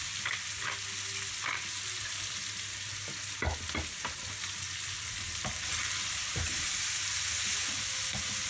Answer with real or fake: real